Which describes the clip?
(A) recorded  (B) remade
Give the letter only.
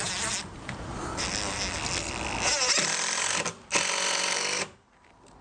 A